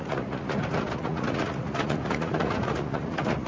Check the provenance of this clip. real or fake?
fake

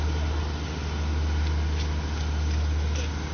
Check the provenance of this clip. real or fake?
real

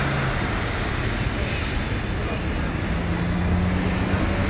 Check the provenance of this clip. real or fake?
real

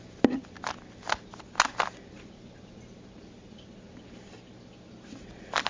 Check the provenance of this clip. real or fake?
real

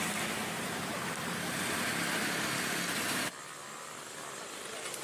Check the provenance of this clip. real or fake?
real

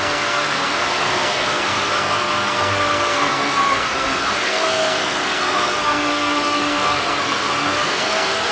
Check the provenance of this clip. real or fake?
fake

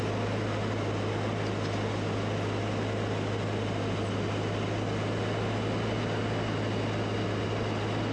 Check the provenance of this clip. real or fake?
real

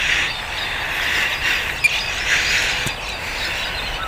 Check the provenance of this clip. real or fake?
real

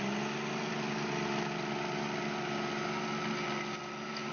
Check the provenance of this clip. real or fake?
real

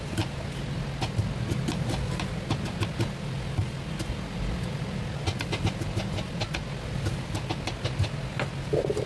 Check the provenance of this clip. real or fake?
real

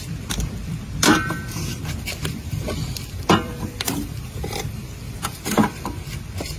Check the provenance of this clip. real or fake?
fake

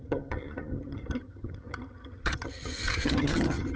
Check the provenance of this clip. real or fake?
fake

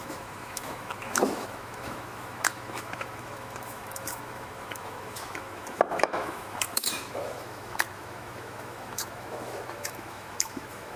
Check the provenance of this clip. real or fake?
fake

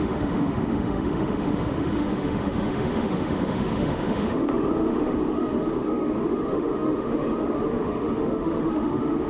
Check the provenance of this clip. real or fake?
fake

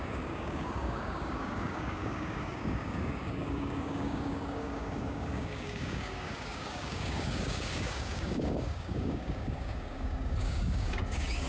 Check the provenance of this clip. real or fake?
fake